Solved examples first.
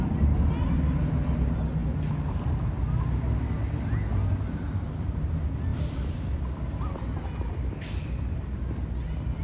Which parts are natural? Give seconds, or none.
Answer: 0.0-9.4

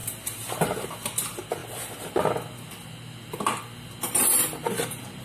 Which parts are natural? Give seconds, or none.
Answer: 0.0-5.2